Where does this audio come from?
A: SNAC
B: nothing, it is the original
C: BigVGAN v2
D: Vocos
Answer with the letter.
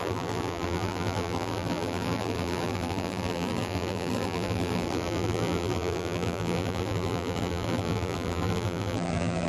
C